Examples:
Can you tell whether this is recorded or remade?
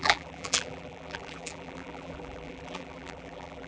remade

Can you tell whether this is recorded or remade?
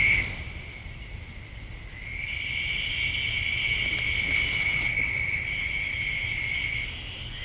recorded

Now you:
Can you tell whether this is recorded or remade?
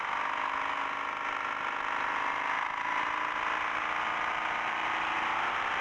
recorded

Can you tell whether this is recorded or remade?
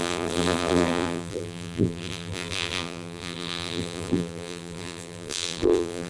remade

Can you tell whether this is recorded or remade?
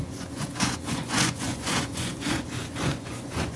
remade